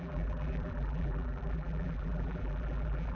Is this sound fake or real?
fake